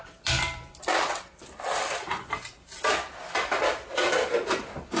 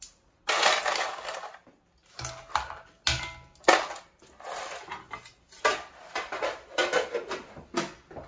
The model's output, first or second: first